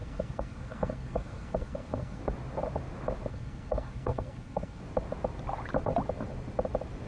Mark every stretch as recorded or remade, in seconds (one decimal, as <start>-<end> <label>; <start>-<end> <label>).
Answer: 0.0-2.2 remade; 2.2-3.3 recorded; 3.3-4.8 remade; 4.8-7.1 recorded